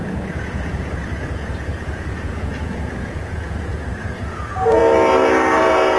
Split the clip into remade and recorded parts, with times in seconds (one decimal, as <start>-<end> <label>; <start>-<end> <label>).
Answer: 0.0-4.8 remade; 4.8-5.6 recorded; 5.6-6.0 remade